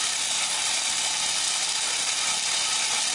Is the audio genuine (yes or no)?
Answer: yes